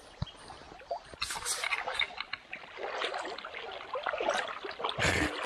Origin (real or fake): real